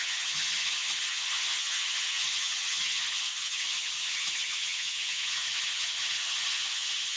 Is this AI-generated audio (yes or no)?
yes